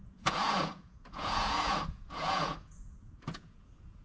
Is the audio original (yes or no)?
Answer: no